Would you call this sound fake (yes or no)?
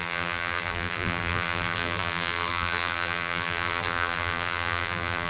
yes